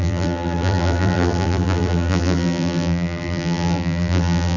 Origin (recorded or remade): remade